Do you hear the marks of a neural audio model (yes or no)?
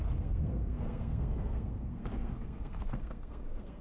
yes